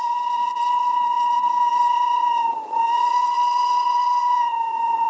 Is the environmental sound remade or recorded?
remade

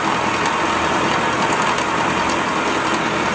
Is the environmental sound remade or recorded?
recorded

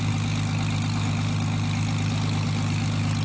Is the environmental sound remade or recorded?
recorded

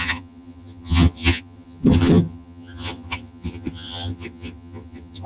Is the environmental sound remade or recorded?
remade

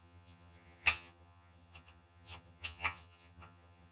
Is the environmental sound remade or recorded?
remade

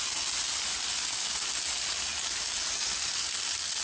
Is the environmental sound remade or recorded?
recorded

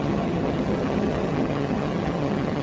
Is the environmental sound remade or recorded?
remade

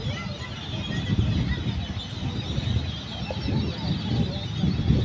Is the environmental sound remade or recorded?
recorded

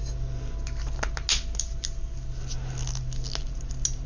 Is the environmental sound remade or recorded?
recorded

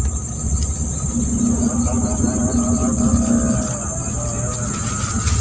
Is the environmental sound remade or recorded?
recorded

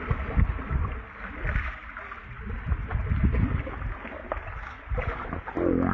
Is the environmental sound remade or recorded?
recorded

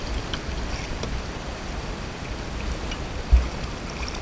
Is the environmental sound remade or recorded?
recorded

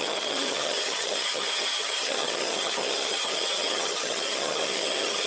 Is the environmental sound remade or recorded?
remade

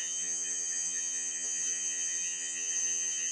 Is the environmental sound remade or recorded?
remade